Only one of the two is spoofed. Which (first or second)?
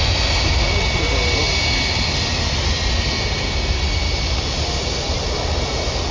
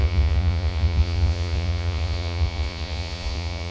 second